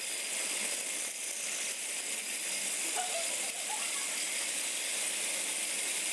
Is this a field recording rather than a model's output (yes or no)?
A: yes